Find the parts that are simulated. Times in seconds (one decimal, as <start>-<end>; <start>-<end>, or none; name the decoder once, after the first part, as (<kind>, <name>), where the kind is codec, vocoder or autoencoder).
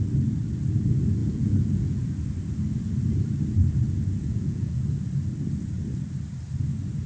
1.2-2.0 (vocoder, Vocos); 4.3-4.9